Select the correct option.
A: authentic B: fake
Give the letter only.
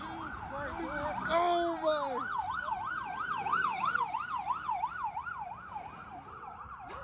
A